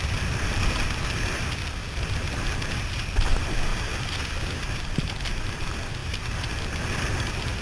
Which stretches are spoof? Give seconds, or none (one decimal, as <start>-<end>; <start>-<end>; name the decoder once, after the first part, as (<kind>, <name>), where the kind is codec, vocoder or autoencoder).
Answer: none